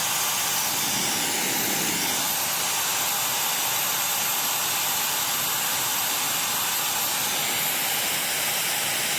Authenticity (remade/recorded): recorded